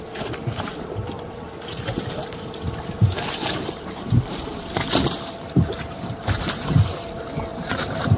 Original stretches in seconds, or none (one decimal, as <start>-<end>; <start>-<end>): 0.0-3.0; 7.0-7.5